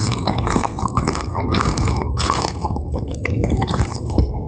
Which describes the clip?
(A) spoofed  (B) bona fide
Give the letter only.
A